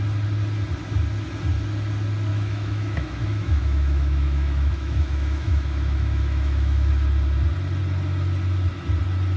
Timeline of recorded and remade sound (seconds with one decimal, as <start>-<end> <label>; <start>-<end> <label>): 0.0-2.3 recorded; 2.3-6.9 remade; 6.9-9.4 recorded